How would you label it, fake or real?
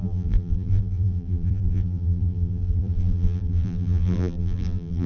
fake